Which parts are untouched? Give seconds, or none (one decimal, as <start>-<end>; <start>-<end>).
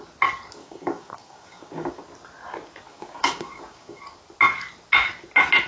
0.0-0.6; 2.0-2.9; 4.0-5.7